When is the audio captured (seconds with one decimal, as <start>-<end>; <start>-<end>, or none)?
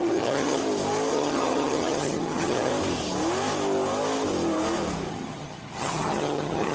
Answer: 0.6-1.1; 2.7-5.1